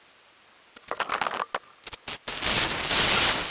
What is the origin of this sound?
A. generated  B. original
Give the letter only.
B